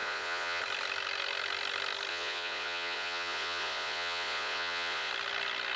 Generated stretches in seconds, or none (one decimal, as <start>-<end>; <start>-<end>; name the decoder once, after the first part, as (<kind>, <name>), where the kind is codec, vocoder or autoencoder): 0.0-0.6 (vocoder, Vocos); 2.1-5.1